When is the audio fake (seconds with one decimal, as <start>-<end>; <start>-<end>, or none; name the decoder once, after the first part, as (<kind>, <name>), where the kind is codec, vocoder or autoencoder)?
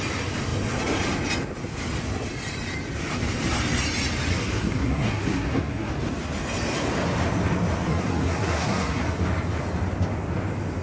4.3-5.9 (codec, SNAC); 7.9-9.0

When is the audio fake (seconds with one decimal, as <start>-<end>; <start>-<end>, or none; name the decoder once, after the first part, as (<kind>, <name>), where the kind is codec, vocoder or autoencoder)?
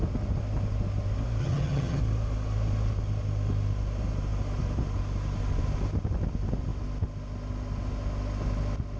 1.4-2.0 (vocoder, HiFi-GAN)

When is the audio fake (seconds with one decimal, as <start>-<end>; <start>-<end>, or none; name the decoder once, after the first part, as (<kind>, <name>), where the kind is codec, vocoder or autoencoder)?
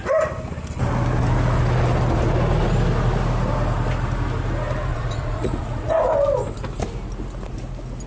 4.9-5.9 (vocoder, Vocos)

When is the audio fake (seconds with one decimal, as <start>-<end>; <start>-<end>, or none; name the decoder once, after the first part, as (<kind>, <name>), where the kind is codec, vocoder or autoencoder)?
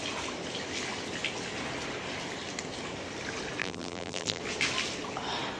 3.6-4.4 (vocoder, BigVGAN v2)